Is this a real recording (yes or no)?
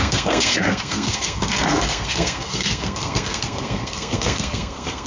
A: no